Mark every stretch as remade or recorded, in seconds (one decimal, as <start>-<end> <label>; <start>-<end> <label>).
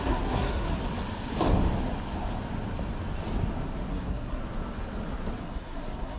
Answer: 0.0-0.8 remade; 0.8-3.9 recorded; 3.9-4.4 remade; 4.4-5.4 recorded; 5.4-6.2 remade